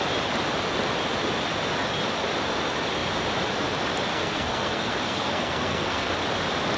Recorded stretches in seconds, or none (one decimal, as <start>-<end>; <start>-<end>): 0.0-4.1; 6.1-6.8